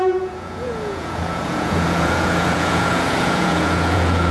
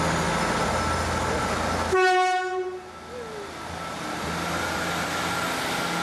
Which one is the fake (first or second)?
first